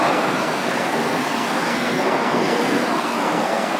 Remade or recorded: remade